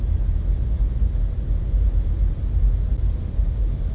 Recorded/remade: recorded